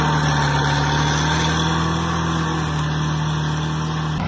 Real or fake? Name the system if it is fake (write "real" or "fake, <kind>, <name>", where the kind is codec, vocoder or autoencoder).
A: real